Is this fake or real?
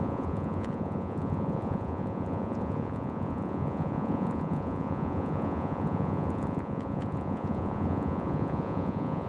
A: fake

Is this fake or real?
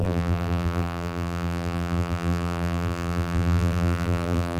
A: fake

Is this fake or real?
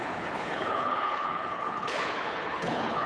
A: fake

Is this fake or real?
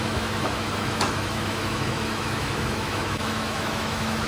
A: fake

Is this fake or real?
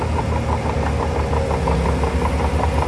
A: real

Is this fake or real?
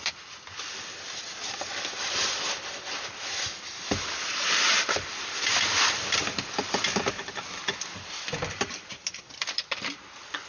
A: fake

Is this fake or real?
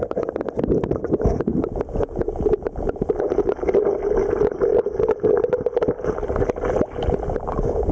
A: real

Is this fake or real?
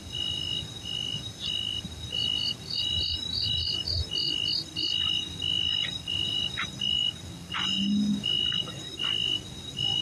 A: real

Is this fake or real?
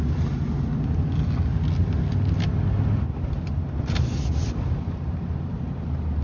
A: real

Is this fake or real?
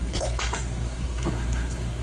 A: fake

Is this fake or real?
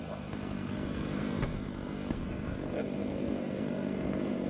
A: fake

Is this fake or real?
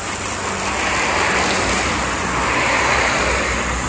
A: real